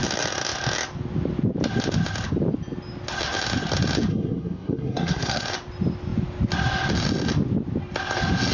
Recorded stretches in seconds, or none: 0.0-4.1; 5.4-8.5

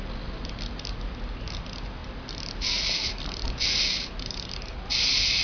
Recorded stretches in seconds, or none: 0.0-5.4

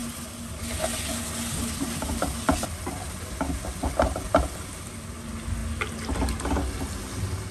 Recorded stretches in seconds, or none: 0.0-7.5

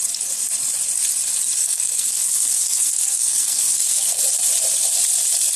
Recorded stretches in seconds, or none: 0.0-1.6; 4.2-5.6

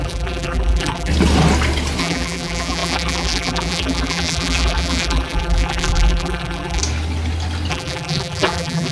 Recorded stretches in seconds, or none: 1.1-2.0; 6.8-7.7